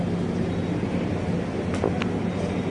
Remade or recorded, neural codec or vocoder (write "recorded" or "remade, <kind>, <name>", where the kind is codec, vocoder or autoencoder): recorded